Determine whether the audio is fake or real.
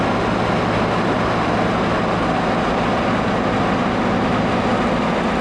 real